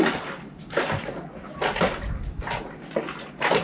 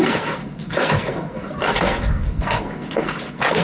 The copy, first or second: second